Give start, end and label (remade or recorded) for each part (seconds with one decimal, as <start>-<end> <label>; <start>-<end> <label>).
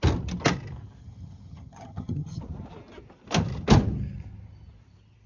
0.0-1.0 recorded; 1.0-2.4 remade; 2.4-5.3 recorded